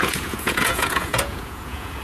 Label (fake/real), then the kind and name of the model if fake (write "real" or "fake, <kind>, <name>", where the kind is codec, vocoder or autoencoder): fake, vocoder, Vocos